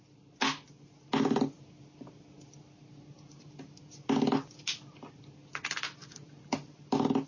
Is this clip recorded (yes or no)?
yes